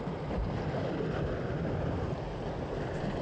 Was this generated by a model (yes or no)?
no